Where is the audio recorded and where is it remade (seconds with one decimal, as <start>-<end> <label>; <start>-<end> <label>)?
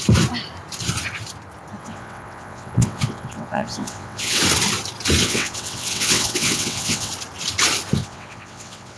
0.0-1.8 recorded; 1.8-4.4 remade; 4.4-5.2 recorded; 5.2-7.1 remade; 7.1-8.0 recorded; 8.0-9.0 remade